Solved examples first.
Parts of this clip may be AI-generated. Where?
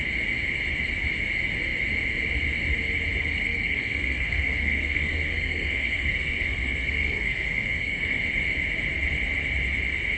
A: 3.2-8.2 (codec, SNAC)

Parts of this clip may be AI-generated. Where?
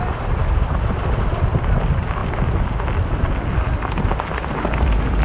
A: none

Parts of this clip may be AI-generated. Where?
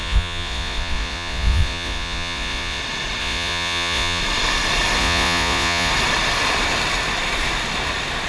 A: 0.0-2.8 (vocoder, Vocos); 3.2-4.2; 5.0-5.9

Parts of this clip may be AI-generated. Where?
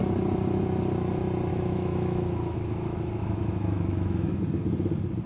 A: 1.5-4.4 (autoencoder, DAC-VAE)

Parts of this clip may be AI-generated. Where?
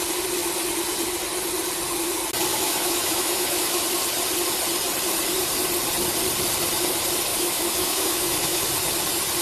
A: 2.5-3.8 (autoencoder, DAC-VAE); 7.3-8.6